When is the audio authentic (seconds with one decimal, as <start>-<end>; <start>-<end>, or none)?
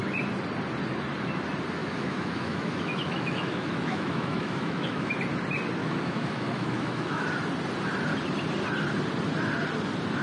0.0-1.8; 5.1-5.8; 7.2-10.2